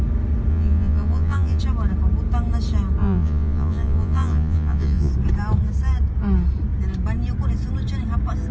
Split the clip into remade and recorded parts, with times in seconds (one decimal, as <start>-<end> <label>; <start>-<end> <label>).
0.0-0.5 recorded; 0.5-1.6 remade; 1.6-3.0 recorded; 3.0-5.1 remade; 5.1-8.5 recorded